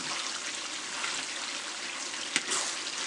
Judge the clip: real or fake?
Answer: real